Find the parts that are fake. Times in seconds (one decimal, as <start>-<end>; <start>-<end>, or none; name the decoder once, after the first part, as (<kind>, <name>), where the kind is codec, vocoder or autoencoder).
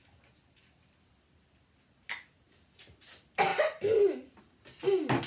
none